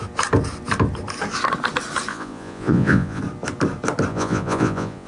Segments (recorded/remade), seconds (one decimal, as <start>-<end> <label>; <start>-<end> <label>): 0.0-2.1 recorded; 2.1-3.2 remade; 3.2-4.1 recorded; 4.1-5.1 remade